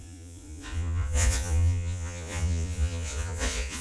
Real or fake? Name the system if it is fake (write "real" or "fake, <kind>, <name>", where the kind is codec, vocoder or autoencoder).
fake, vocoder, Vocos